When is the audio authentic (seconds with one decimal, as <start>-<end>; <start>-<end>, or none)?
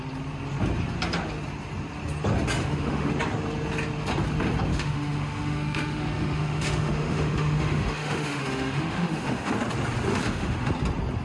0.0-2.6; 3.1-4.7; 9.5-10.1; 10.7-11.2